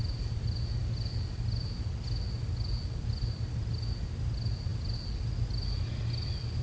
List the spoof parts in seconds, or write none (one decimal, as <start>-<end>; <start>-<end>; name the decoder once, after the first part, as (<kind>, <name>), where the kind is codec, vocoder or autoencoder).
none